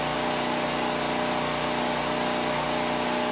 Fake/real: real